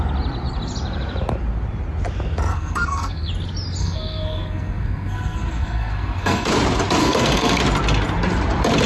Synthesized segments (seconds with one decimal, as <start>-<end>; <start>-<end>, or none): 2.5-3.3; 3.8-6.5; 7.0-7.6